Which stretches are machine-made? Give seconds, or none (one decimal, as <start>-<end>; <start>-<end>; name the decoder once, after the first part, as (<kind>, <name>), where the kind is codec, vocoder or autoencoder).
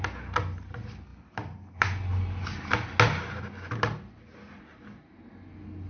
none